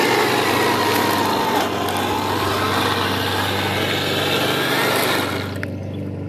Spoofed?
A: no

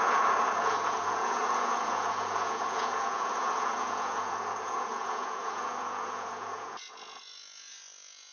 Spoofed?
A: yes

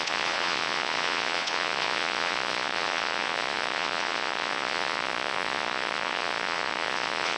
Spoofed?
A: yes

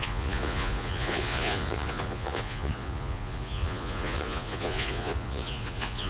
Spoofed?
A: yes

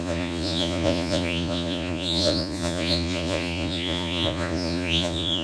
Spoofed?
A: yes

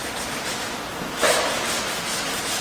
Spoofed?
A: no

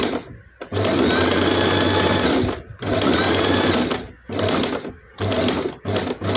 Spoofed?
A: no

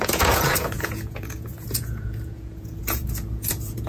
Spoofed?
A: yes